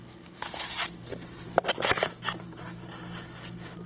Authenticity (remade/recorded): recorded